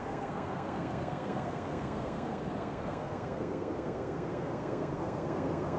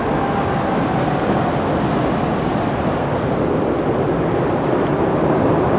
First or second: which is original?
second